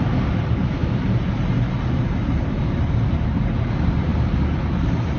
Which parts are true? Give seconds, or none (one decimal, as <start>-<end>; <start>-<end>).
0.0-5.2

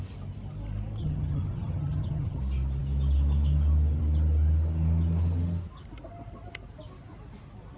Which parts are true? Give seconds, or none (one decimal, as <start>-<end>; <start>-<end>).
0.0-1.0; 2.4-7.8

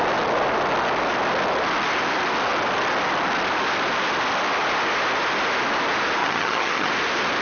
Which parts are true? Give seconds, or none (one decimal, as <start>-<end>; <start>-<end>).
0.0-6.2; 6.9-7.4

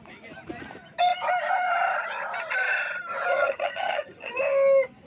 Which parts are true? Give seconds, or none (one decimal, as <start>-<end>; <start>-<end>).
0.0-3.3; 4.4-5.1